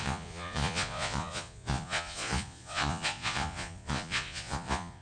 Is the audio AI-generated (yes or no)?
yes